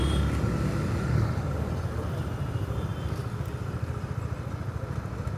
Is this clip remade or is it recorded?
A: recorded